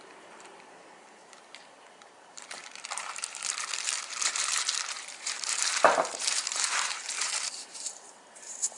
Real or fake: fake